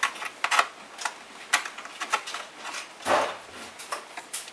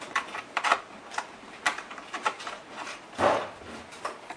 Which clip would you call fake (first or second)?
second